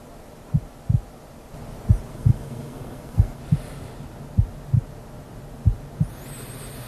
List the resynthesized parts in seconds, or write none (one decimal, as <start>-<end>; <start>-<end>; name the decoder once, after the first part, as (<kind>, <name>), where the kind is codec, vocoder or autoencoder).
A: 2.1-3.4 (codec, SNAC)